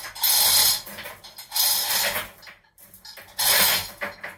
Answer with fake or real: real